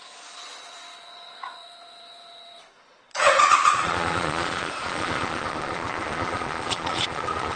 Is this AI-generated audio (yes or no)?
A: yes